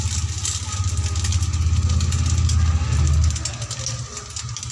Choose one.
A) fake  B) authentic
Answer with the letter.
B